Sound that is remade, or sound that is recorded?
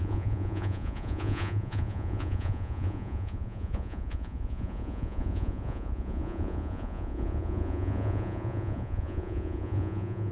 remade